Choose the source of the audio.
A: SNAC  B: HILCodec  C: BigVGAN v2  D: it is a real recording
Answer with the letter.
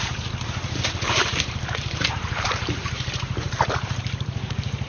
C